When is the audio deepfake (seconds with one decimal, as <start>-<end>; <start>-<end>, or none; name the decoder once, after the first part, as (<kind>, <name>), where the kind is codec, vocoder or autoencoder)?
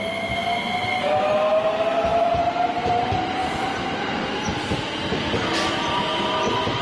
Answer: 3.4-4.8 (vocoder, BigVGAN v2)